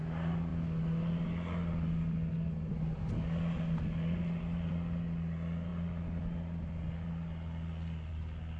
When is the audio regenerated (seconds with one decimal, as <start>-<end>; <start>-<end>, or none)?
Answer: none